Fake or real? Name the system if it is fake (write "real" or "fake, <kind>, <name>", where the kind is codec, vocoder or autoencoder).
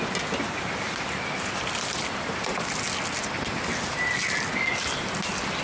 real